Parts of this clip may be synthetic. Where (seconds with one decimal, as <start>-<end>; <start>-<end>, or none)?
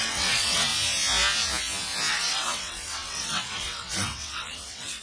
0.0-0.7; 2.1-5.0